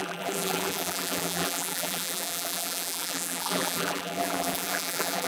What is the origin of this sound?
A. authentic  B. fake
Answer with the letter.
B